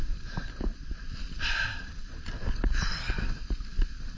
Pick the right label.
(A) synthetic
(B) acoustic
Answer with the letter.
B